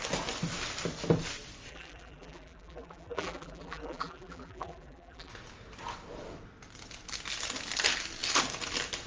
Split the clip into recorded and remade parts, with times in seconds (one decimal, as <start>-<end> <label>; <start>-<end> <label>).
0.0-1.7 recorded; 1.7-5.3 remade; 5.3-9.1 recorded